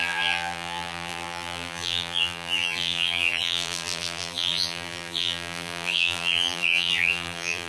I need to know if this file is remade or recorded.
remade